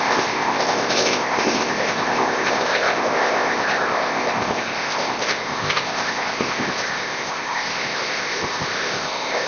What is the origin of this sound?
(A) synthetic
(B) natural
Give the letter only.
A